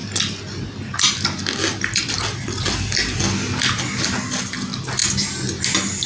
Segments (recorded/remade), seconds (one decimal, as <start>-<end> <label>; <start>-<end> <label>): 0.0-6.1 recorded